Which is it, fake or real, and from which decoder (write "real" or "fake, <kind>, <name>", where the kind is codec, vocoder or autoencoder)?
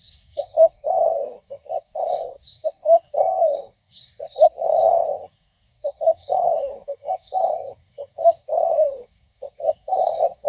fake, codec, SNAC